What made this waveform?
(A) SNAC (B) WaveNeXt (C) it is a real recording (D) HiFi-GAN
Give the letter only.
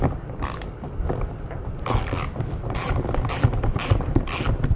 C